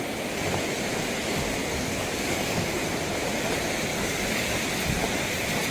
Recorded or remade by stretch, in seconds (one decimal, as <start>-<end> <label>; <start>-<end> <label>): 0.0-1.6 recorded; 1.6-2.8 remade; 2.8-3.9 recorded; 3.9-4.5 remade; 4.5-5.7 recorded